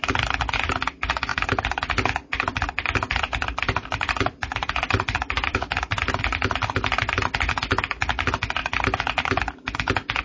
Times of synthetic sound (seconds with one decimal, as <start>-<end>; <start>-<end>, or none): 1.3-6.2